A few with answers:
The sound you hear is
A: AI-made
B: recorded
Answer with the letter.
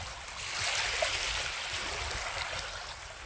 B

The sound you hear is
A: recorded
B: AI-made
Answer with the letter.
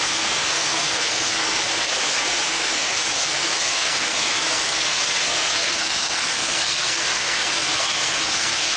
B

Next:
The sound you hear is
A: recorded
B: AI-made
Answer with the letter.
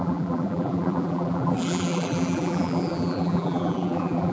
B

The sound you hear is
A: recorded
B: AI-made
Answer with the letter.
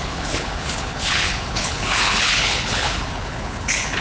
B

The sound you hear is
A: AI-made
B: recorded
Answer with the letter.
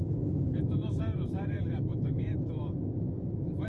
A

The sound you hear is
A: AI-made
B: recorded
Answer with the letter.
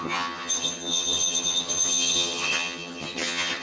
A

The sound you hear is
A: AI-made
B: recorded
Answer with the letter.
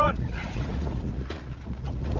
A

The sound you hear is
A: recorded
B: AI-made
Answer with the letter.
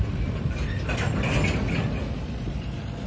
A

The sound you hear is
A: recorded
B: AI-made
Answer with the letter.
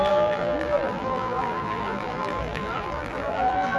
B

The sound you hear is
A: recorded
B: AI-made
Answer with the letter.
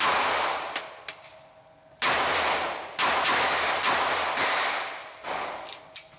A